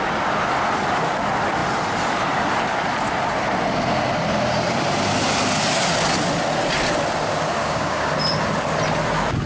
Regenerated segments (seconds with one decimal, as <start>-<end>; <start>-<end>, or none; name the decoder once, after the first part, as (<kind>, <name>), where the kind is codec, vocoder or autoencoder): 7.6-8.1 (codec, DAC)